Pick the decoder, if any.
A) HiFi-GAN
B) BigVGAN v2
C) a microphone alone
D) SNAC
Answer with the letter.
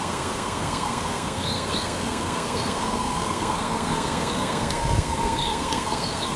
D